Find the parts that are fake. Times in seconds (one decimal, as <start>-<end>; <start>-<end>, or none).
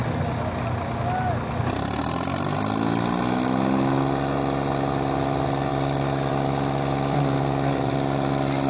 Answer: 5.7-6.3